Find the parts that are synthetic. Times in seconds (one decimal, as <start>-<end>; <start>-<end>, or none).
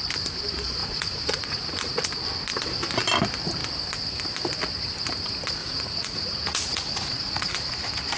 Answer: 0.8-2.1; 5.6-7.7